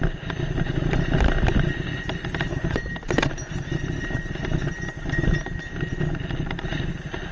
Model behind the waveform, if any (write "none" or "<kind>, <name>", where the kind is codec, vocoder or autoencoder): none